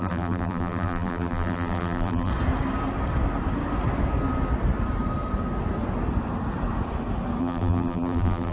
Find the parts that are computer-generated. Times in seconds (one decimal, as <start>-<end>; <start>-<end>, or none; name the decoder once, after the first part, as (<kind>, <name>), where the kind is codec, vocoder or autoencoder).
0.0-2.3 (vocoder, BigVGAN v2); 7.4-8.5